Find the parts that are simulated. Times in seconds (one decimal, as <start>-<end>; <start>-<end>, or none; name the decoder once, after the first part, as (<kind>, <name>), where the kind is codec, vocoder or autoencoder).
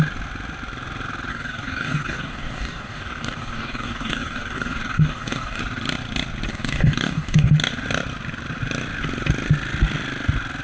1.3-5.6 (codec, DAC); 6.5-7.5